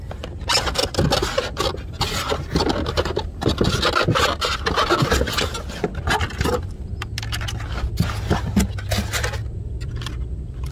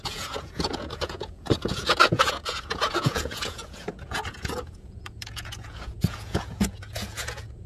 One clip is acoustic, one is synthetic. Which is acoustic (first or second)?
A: first